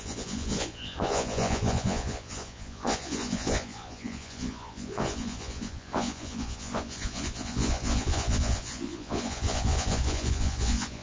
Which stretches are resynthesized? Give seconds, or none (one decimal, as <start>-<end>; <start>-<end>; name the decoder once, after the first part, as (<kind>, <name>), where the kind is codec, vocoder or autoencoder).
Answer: 0.0-11.0 (vocoder, Vocos)

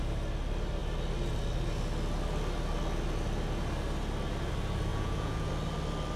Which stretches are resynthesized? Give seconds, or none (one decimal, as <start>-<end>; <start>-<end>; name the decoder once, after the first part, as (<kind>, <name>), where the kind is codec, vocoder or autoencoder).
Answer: 4.9-5.5 (vocoder, Vocos)

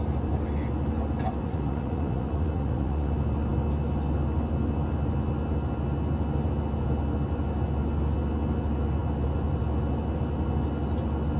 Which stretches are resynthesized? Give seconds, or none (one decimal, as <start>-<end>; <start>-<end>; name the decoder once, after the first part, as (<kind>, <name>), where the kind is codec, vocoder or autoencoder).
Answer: 1.4-3.1 (vocoder, Vocos)

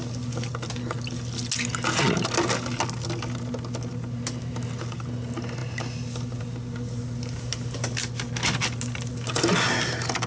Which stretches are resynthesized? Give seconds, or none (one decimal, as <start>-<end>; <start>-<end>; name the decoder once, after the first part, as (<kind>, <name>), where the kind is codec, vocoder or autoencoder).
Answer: none

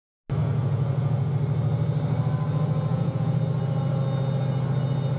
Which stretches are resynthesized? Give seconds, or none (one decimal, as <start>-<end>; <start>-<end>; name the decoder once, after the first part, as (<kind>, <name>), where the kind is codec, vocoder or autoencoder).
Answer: 0.4-1.3 (vocoder, Vocos); 2.9-3.4